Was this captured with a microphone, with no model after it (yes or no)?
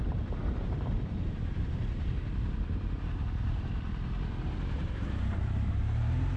no